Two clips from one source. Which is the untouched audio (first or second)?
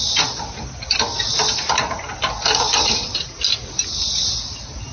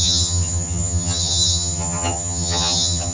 first